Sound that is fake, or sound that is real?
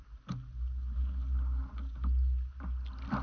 real